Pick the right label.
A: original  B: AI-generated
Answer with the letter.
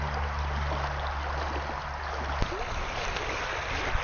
A